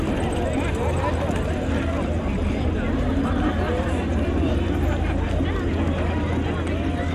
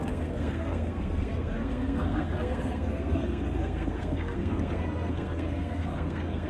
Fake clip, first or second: second